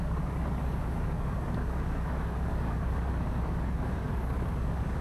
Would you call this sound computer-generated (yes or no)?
yes